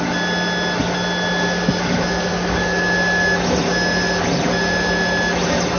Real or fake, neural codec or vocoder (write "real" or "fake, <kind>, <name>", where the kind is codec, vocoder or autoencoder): real